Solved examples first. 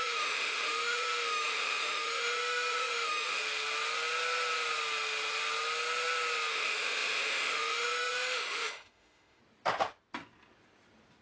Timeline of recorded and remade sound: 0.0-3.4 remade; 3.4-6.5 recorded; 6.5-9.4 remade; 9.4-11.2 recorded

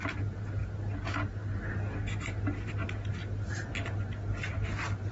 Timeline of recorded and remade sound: 0.0-5.1 recorded

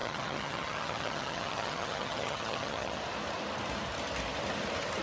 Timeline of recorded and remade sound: 0.0-3.0 remade; 3.0-5.0 recorded

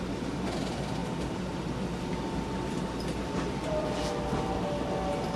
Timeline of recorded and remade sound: 0.0-5.4 recorded